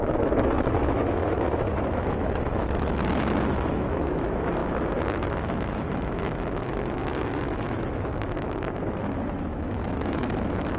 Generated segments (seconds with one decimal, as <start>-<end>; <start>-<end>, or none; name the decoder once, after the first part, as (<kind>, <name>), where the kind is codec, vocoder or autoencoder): 0.0-10.8 (autoencoder, DAC-VAE)